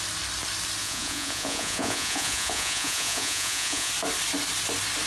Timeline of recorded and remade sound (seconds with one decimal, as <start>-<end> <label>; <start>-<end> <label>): 0.0-0.8 recorded; 0.8-3.9 remade; 3.9-5.1 recorded